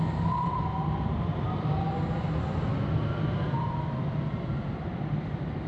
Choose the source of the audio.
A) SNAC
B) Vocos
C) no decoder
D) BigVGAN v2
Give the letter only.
C